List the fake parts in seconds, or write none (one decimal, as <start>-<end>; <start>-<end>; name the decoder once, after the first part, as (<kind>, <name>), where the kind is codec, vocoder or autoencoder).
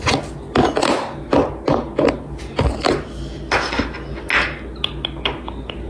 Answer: none